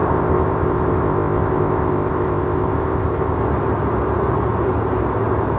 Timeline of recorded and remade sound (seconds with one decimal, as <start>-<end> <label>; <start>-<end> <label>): 0.0-3.4 remade; 3.4-5.6 recorded